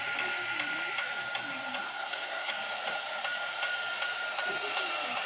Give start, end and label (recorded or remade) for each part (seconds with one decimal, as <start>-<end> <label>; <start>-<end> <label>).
0.0-1.8 recorded; 1.8-2.5 remade; 2.5-5.3 recorded

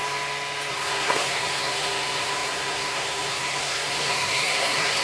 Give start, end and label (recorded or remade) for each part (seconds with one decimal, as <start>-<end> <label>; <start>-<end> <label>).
0.0-0.7 recorded; 0.7-5.0 remade

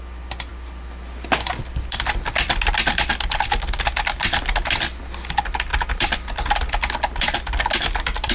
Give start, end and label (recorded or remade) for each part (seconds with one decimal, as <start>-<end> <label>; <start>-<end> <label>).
0.0-8.3 recorded

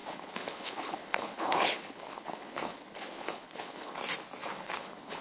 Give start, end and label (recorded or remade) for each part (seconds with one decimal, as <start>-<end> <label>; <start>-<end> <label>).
0.0-4.0 remade; 4.0-4.5 recorded; 4.5-5.2 remade